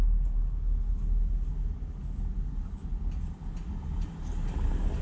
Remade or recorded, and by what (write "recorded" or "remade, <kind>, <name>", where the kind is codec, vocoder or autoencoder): recorded